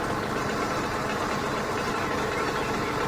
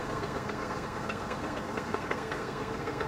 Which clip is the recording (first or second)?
first